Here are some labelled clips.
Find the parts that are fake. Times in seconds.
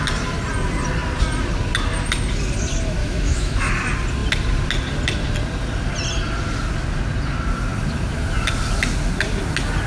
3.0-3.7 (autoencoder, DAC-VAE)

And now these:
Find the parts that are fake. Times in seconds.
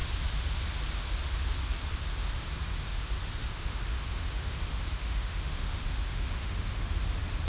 3.4-6.9 (autoencoder, DAC-VAE)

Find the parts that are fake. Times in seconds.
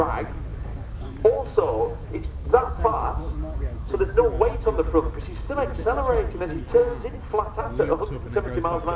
0.5-4.2 (codec, DAC)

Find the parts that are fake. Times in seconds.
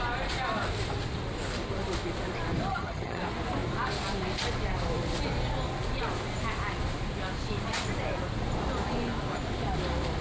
2.7-3.2 (vocoder, HiFi-GAN)